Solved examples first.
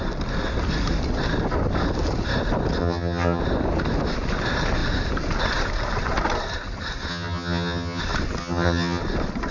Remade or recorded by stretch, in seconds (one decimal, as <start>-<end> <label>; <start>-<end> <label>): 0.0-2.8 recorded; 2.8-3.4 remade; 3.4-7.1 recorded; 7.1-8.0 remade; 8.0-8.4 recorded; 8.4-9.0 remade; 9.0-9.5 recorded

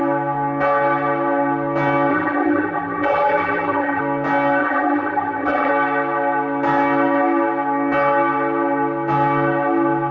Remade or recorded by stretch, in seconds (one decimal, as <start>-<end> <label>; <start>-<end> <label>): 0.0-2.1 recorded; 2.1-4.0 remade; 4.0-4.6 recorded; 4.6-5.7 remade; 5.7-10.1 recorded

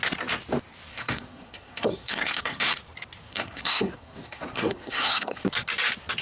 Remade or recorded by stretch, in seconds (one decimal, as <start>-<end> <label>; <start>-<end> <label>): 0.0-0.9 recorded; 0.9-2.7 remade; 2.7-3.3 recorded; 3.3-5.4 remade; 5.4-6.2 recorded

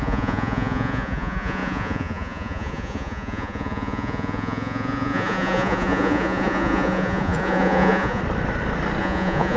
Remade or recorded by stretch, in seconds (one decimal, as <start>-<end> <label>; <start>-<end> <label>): 0.0-8.2 remade; 8.2-9.0 recorded; 9.0-9.6 remade

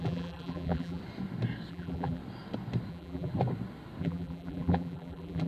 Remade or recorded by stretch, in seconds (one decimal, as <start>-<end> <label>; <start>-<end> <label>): 0.0-1.0 remade; 1.0-1.7 recorded; 1.7-2.2 remade; 2.2-2.9 recorded; 2.9-3.3 remade; 3.3-4.0 recorded; 4.0-5.5 remade

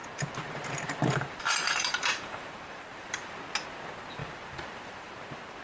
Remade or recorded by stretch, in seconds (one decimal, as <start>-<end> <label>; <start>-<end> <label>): 0.0-3.4 remade; 3.4-4.2 recorded; 4.2-5.1 remade; 5.1-5.6 recorded

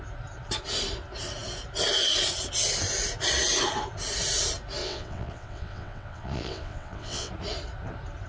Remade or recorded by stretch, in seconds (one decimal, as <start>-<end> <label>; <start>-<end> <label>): 0.0-4.8 recorded; 4.8-7.3 remade; 7.3-8.3 recorded

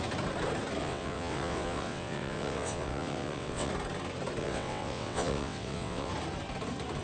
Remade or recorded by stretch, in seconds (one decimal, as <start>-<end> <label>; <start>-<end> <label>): 0.0-0.8 recorded; 0.8-3.7 remade; 3.7-4.4 recorded; 4.4-6.1 remade; 6.1-7.0 recorded